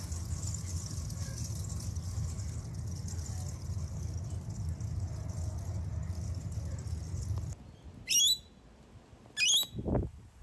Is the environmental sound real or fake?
real